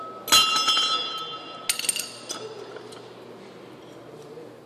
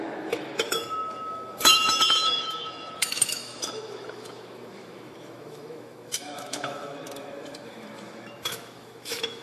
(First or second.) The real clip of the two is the first